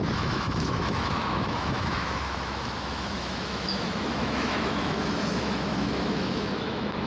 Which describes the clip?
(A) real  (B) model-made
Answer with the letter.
B